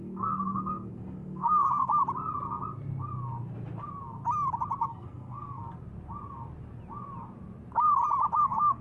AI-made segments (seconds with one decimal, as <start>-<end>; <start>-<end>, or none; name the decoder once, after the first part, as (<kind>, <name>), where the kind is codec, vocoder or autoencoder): 0.0-1.9 (codec, SNAC); 4.8-5.6; 8.4-8.8